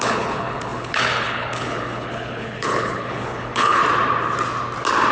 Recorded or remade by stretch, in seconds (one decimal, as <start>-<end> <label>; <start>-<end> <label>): 0.0-3.8 remade; 3.8-5.1 recorded